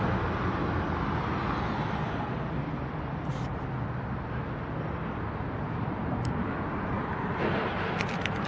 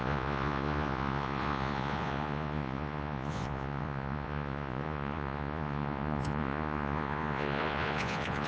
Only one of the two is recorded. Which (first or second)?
first